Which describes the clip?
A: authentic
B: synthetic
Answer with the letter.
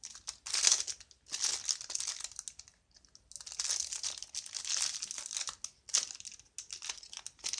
A